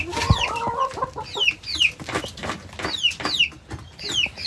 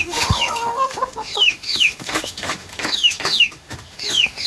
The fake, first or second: second